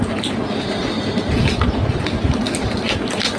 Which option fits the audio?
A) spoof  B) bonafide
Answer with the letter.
B